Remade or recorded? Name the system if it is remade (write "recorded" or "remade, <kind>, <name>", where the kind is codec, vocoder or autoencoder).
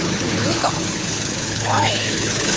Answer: remade, codec, HILCodec